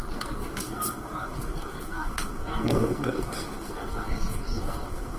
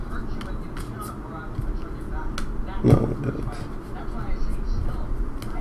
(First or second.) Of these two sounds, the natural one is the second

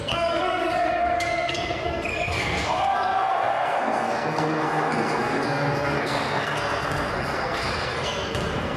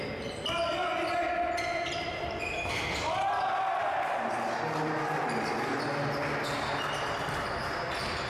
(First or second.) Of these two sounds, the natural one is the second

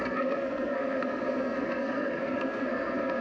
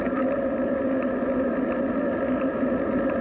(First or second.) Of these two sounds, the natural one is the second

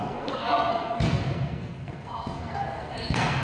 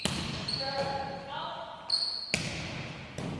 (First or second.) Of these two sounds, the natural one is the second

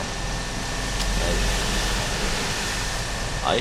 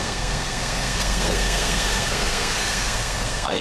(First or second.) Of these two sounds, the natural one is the first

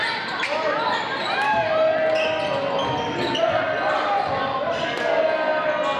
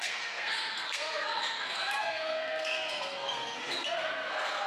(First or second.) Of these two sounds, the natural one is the first